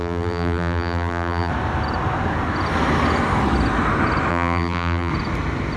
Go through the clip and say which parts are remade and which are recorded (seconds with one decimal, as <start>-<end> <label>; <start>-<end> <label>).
0.0-1.5 remade; 1.5-4.3 recorded; 4.3-5.1 remade; 5.1-5.8 recorded